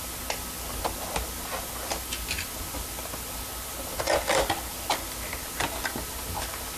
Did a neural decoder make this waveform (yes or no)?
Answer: no